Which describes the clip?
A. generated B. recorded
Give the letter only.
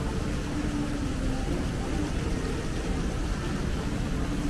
B